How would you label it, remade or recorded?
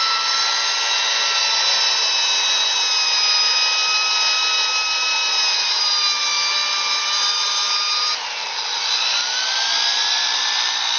recorded